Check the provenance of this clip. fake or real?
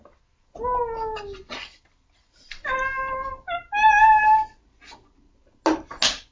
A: real